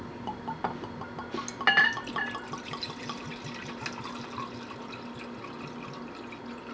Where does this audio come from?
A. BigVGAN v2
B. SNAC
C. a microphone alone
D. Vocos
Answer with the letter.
C